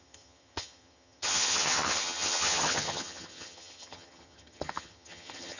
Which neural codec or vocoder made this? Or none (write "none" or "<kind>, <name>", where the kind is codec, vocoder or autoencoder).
vocoder, HiFi-GAN